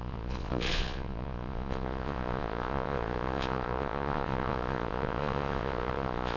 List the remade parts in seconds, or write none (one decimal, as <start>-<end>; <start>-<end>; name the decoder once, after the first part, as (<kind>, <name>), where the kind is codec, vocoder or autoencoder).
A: 0.0-6.4 (vocoder, Vocos)